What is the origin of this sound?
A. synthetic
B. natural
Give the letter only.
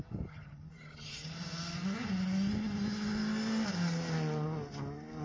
B